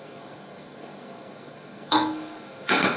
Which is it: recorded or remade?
remade